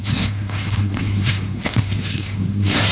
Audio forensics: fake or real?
fake